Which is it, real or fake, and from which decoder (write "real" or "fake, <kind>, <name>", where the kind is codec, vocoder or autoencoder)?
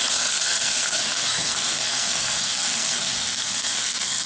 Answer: fake, codec, SNAC